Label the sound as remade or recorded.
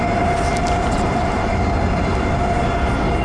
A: recorded